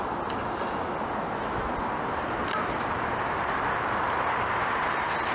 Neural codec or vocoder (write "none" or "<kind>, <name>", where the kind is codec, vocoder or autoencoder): none